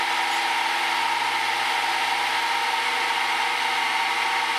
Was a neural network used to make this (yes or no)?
no